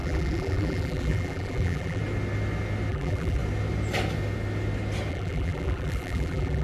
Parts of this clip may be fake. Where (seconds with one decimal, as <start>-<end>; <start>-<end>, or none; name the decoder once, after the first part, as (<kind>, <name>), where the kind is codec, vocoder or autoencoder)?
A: 0.0-2.0 (vocoder, BigVGAN v2); 2.9-3.4; 5.1-6.6